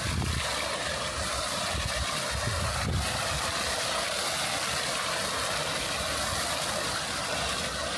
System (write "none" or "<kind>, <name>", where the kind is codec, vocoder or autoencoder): none